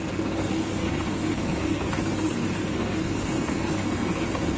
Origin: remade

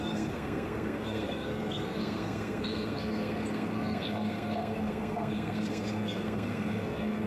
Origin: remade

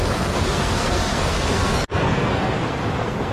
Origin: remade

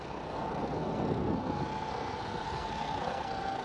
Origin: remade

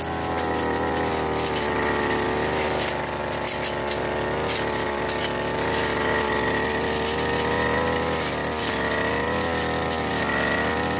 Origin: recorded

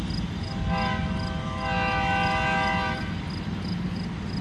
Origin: recorded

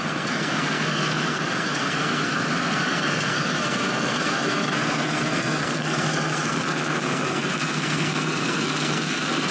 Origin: remade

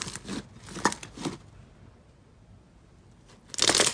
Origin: recorded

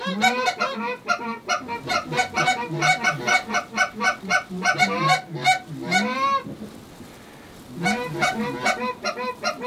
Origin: recorded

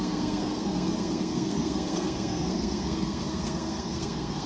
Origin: remade